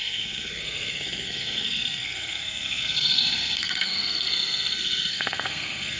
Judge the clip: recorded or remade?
remade